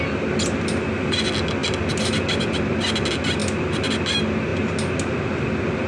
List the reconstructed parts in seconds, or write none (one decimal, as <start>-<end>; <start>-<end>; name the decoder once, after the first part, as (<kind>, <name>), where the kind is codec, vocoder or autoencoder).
none